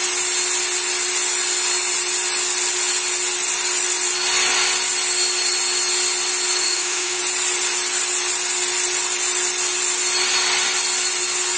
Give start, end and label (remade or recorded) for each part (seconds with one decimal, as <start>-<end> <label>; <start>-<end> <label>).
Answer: 0.0-6.6 recorded; 6.6-7.2 remade; 7.2-11.6 recorded